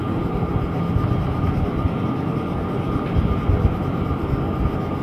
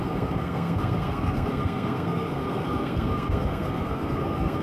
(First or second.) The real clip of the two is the first